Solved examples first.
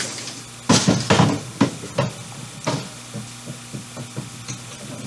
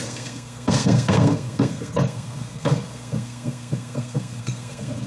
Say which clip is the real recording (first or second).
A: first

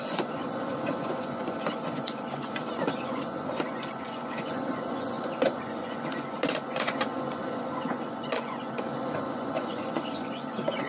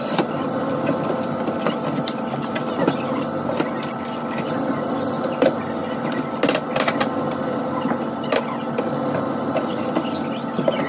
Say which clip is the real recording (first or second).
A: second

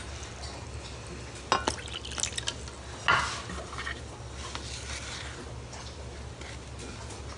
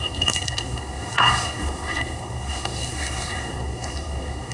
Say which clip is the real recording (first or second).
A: first